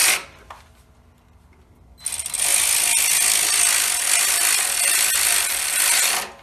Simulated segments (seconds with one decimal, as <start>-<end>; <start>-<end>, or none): none